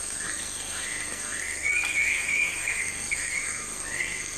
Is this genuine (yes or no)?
no